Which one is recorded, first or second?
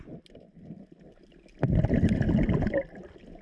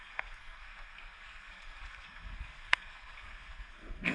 first